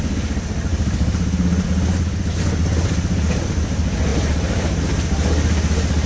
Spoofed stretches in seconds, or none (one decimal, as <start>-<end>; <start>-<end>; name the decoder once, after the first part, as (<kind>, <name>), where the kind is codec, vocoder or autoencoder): 0.7-1.2 (codec, DAC)